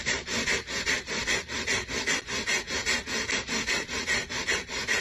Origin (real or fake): real